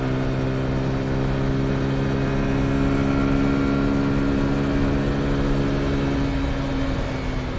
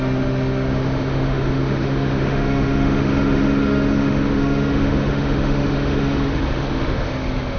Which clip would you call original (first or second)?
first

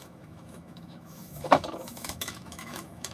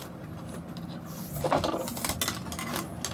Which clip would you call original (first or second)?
second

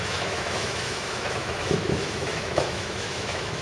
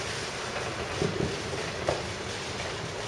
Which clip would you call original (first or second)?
second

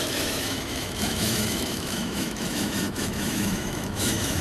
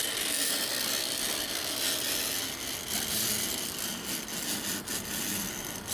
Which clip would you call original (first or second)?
second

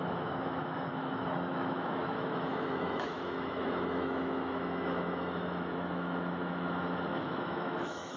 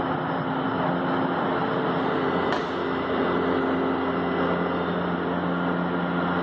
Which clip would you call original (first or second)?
second